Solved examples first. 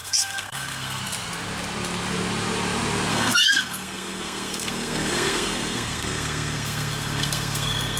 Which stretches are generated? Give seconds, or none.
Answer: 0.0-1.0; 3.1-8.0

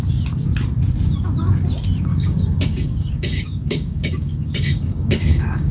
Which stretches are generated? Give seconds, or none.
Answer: 2.1-5.7

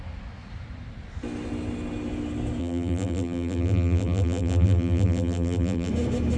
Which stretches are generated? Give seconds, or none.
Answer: 2.6-5.9

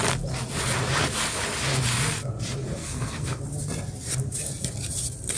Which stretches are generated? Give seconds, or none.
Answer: 2.8-3.4

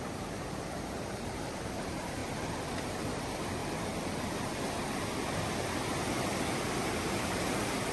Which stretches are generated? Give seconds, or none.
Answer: 0.0-2.2; 2.8-3.6; 7.3-7.9

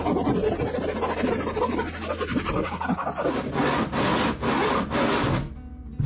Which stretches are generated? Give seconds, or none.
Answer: none

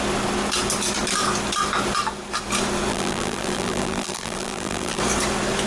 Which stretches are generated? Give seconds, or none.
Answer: 2.9-5.0

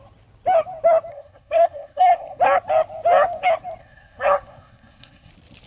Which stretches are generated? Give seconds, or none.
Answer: 1.1-2.4; 3.8-5.3